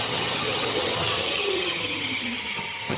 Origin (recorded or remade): remade